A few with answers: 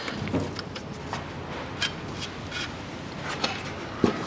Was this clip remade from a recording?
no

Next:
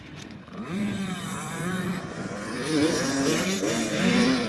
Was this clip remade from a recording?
yes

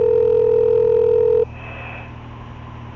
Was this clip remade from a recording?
no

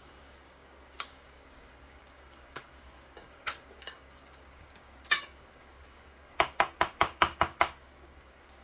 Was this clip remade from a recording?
yes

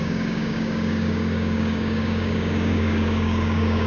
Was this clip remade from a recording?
yes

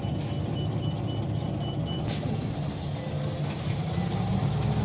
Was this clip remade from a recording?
no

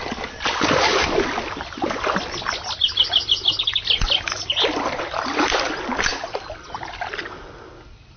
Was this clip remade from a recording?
no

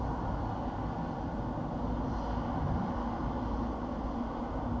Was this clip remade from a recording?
no